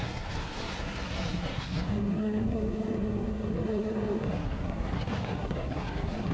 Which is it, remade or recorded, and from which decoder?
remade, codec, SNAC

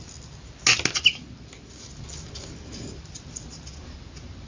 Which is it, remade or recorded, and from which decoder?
recorded